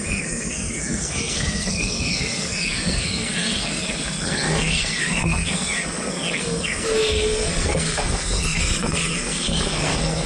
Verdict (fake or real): fake